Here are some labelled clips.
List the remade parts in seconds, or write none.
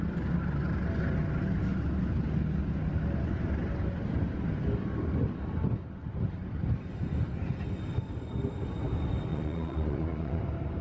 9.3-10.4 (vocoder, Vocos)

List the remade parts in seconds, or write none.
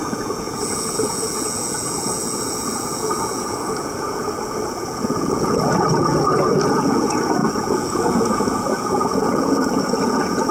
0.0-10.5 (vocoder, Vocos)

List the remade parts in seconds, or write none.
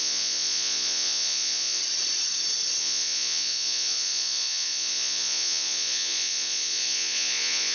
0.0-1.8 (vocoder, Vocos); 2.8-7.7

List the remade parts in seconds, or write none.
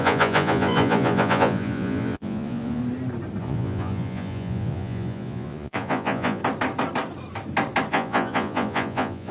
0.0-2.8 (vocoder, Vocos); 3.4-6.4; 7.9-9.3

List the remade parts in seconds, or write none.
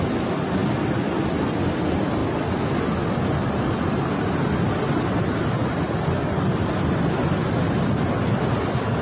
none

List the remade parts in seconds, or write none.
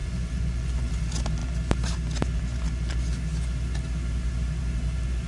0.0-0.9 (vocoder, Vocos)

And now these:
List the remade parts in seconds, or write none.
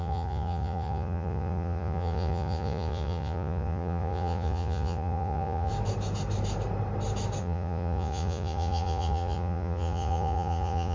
0.0-5.7 (vocoder, Vocos); 7.4-10.9